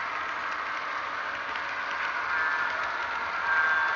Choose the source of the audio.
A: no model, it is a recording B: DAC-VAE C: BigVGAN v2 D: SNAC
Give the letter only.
A